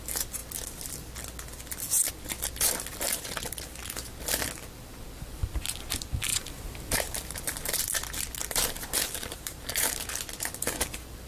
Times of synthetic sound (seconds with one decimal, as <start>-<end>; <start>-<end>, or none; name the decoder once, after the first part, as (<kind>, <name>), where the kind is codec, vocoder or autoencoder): 6.3-7.8 (vocoder, BigVGAN v2); 8.4-10.2